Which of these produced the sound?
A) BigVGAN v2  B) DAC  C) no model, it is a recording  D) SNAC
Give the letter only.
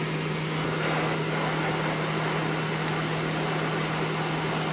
C